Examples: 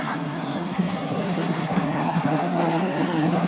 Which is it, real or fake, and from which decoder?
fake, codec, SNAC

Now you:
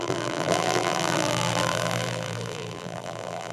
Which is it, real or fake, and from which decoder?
fake, vocoder, BigVGAN v2